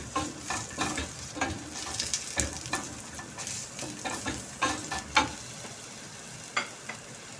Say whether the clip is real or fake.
real